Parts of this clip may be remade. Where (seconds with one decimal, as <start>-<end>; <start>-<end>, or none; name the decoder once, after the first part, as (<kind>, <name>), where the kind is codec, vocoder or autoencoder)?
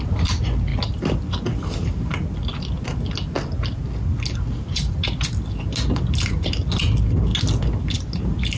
none